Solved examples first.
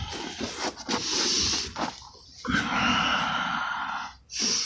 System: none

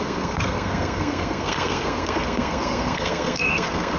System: codec, SNAC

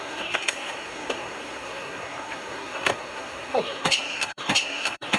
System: codec, SNAC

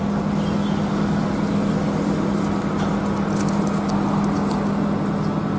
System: none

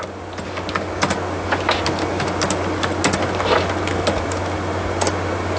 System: none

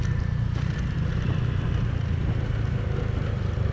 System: none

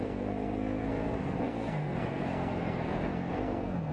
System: codec, SNAC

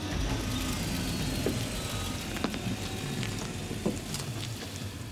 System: none